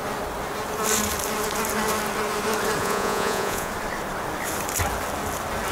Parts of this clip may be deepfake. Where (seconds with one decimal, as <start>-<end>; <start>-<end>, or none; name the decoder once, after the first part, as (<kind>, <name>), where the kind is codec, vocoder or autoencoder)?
2.8-3.7 (vocoder, Vocos)